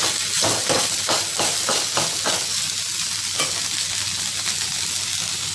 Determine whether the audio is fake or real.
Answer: real